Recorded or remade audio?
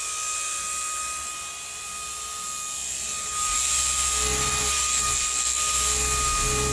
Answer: recorded